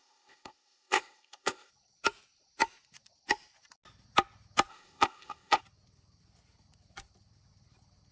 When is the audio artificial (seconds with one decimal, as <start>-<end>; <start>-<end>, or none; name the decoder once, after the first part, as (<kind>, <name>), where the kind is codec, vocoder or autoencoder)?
0.0-1.7 (codec, ZipCodec); 4.7-5.6